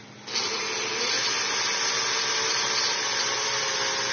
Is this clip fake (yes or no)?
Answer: no